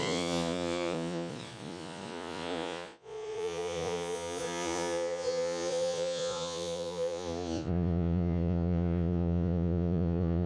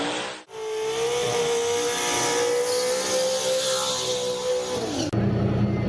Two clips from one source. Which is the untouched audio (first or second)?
second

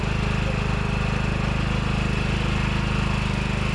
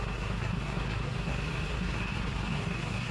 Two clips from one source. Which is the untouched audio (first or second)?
first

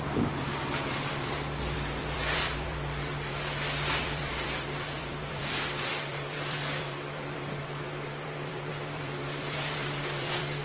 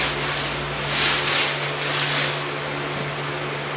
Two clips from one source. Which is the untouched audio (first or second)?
second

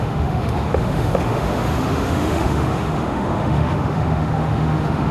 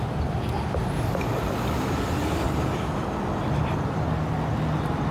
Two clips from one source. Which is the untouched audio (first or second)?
second